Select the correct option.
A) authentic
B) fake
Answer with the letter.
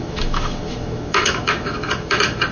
B